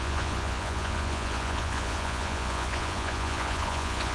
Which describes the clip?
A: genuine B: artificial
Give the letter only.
B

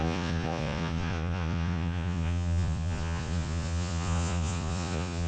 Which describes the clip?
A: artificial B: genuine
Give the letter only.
A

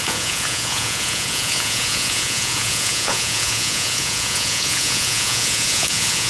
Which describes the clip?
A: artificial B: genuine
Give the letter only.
A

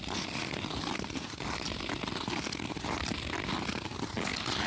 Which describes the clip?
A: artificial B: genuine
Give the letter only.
B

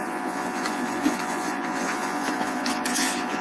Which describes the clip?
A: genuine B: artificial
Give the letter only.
B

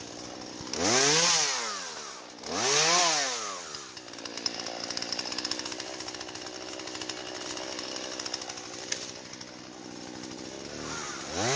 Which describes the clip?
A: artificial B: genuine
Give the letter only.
B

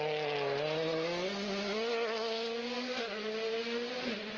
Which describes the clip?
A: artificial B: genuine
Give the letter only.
B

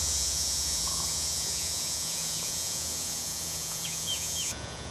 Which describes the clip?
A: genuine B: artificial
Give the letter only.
B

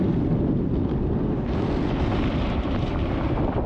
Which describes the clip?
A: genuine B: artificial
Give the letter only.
A